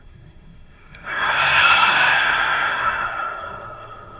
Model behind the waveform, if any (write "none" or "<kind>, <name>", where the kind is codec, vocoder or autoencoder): codec, SNAC